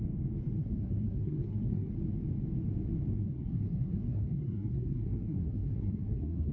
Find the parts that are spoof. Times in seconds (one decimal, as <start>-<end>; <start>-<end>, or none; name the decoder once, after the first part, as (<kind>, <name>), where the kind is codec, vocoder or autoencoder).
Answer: 0.6-1.9 (codec, SNAC); 3.2-6.5